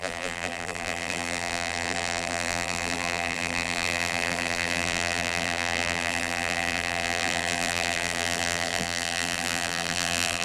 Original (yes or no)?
no